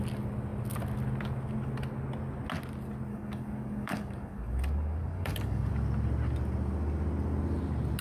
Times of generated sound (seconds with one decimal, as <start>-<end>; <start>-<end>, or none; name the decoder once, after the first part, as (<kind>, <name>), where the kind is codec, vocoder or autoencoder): 3.1-5.7 (codec, DAC)